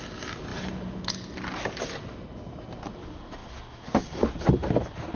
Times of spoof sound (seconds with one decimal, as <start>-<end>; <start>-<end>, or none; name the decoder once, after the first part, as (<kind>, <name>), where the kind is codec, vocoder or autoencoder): none